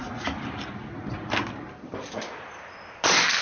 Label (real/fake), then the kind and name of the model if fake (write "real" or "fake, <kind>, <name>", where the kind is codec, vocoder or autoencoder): real